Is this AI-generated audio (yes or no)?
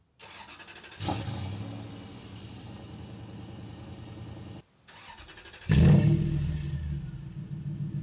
no